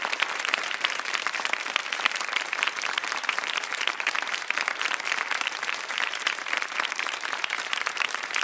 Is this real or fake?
fake